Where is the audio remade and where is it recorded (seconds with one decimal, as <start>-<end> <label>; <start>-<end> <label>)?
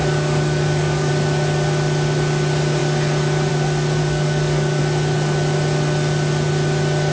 0.0-1.1 remade; 1.1-4.0 recorded; 4.0-4.8 remade; 4.8-7.1 recorded